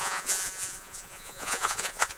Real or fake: fake